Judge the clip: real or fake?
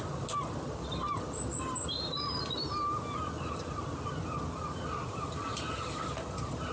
real